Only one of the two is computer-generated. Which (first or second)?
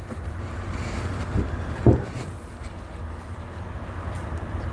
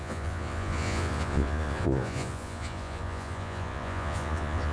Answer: second